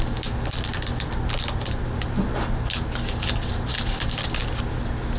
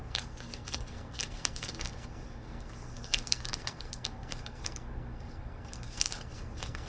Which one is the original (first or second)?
first